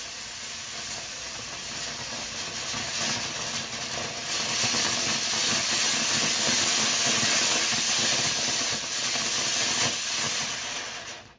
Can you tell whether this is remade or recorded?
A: recorded